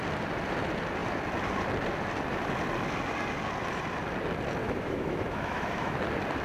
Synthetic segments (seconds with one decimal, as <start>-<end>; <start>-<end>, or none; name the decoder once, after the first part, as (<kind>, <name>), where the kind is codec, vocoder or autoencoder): 4.6-6.0 (autoencoder, DAC-VAE)